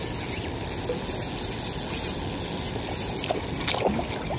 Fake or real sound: real